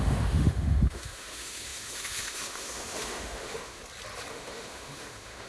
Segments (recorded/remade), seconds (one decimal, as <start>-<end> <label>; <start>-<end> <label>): 0.0-3.8 remade; 3.8-4.3 recorded; 4.3-5.5 remade